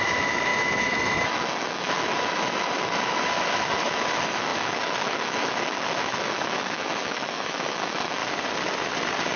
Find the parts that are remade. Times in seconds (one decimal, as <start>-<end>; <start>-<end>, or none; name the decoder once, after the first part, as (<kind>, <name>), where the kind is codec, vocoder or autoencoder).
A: 0.0-8.2 (autoencoder, DAC-VAE)